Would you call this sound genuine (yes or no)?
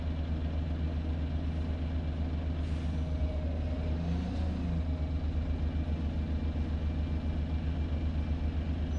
yes